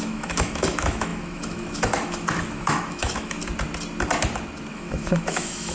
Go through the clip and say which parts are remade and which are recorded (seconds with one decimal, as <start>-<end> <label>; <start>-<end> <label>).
0.0-3.4 remade; 3.4-4.7 recorded; 4.7-5.7 remade